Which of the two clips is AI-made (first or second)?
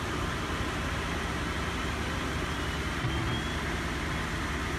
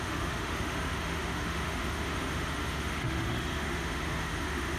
second